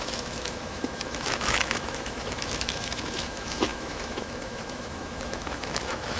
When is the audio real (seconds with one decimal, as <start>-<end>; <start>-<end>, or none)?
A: none